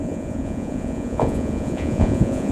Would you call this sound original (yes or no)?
no